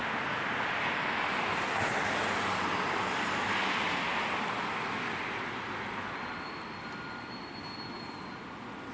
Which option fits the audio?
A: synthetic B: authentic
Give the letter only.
B